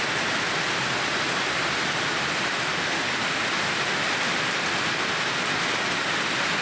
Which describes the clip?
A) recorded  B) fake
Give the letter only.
A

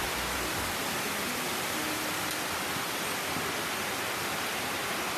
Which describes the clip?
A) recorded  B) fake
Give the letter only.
A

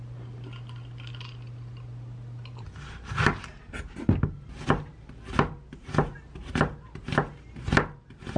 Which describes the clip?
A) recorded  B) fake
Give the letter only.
A